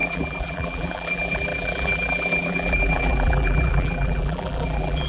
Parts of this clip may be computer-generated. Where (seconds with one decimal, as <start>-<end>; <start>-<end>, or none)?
0.0-5.1